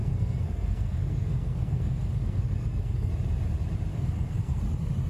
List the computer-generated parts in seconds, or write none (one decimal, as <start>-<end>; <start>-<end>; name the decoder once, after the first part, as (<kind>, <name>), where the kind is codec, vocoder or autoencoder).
0.0-3.1 (codec, SNAC); 3.9-4.6